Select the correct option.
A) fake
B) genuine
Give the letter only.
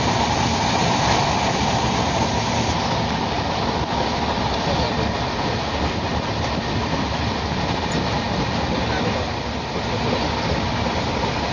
B